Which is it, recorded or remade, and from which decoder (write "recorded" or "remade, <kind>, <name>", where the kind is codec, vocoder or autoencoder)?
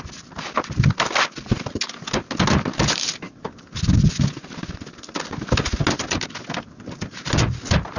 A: recorded